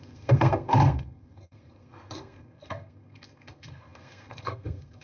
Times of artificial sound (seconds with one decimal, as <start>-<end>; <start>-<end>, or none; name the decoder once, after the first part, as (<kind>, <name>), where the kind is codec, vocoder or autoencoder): 0.0-5.0 (codec, SNAC)